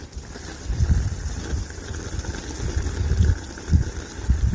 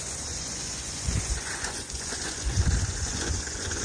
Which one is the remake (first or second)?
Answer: second